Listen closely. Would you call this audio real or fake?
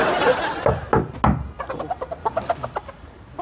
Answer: real